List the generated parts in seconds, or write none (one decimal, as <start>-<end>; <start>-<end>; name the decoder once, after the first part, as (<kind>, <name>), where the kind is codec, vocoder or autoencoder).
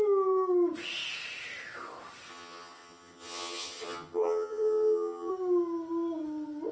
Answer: 2.3-5.3 (vocoder, HiFi-GAN)